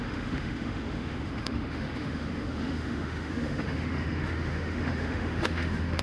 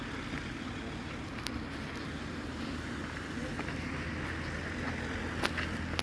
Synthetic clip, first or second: first